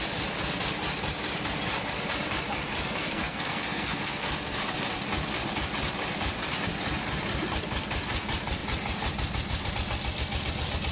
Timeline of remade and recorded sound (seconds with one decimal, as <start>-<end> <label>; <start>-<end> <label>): 0.0-3.0 recorded; 3.0-4.3 remade; 4.3-10.9 recorded